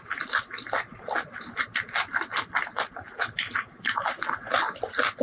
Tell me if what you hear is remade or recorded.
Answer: recorded